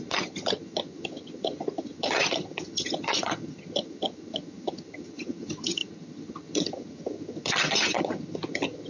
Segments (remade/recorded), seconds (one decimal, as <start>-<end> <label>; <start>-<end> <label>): 0.0-8.9 remade